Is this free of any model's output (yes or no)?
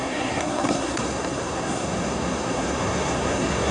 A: no